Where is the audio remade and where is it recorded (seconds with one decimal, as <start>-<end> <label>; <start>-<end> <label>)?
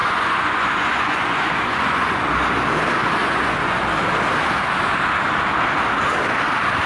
0.0-2.3 remade; 2.3-3.2 recorded; 3.2-3.8 remade; 3.8-6.9 recorded